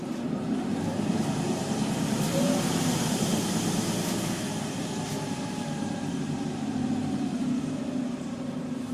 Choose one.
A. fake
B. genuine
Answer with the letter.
A